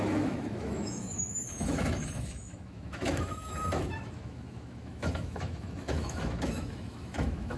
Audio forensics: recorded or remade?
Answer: remade